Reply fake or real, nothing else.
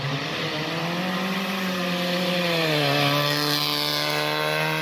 real